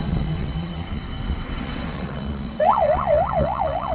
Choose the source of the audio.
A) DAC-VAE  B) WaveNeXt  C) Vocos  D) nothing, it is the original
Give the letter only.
B